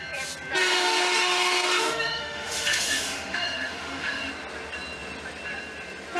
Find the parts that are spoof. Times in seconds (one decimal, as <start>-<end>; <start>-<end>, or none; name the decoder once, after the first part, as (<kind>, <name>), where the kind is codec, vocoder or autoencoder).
0.6-4.3 (autoencoder, DAC-VAE)